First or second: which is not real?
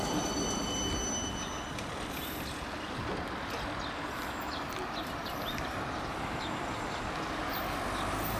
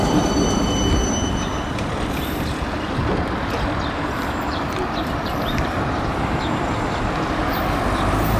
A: second